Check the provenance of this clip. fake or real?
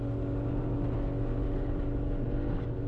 real